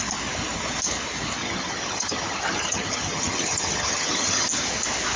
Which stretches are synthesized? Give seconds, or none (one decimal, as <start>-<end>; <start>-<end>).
1.4-4.5